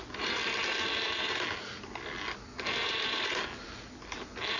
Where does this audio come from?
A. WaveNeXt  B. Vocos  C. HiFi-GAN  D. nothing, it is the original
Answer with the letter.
D